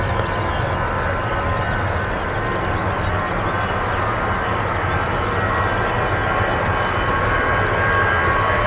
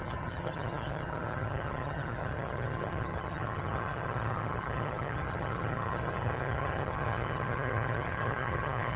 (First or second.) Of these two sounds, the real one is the first